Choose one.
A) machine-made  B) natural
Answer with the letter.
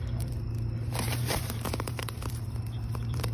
A